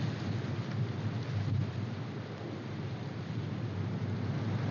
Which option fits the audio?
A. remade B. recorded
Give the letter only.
B